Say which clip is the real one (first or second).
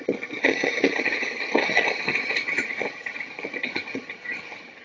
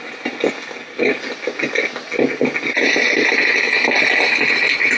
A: second